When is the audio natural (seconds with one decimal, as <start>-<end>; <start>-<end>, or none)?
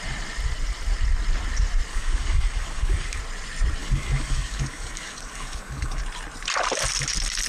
0.0-1.9; 3.2-3.8; 6.0-7.5